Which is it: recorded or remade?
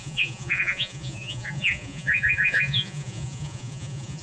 remade